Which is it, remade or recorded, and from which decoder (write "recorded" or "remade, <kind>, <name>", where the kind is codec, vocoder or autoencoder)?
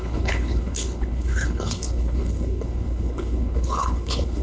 remade, codec, HILCodec